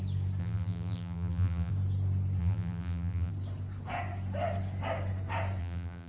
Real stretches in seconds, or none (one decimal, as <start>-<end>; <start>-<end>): 0.0-0.4; 1.7-2.4; 3.3-5.6